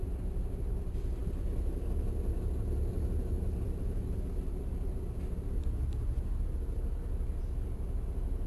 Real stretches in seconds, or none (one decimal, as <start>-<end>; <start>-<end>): 0.0-8.5